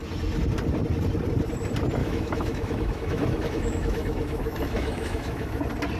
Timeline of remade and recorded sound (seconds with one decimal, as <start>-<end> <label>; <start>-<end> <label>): 0.0-2.0 recorded; 2.0-5.6 remade; 5.6-6.0 recorded

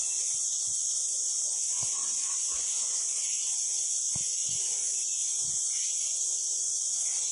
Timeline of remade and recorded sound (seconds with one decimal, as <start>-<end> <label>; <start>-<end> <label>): 0.0-7.3 recorded

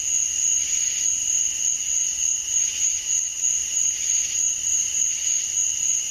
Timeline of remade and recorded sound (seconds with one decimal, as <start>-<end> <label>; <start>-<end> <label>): 0.0-6.1 recorded

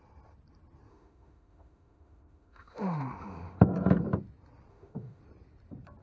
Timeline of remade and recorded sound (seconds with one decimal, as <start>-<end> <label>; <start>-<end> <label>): 0.0-0.9 recorded; 0.9-3.6 remade; 3.6-4.7 recorded; 4.7-5.2 remade; 5.2-6.0 recorded

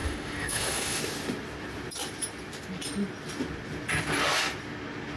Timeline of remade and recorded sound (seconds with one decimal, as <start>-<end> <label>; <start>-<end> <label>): 0.0-1.0 remade; 1.0-5.2 recorded

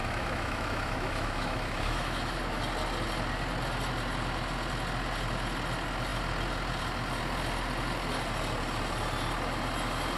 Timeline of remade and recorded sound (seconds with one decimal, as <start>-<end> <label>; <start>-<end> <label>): 0.0-2.6 remade; 2.6-10.2 recorded

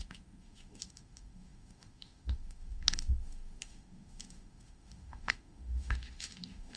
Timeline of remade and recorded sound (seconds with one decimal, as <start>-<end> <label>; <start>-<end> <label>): 0.0-6.8 remade

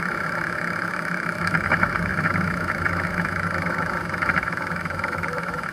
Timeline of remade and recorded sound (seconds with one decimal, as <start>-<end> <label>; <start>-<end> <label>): 0.0-5.7 remade